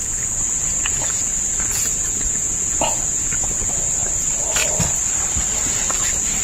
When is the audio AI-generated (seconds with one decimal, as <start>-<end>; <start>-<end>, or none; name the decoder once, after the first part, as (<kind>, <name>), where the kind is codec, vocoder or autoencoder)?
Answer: 0.0-3.8 (vocoder, Vocos)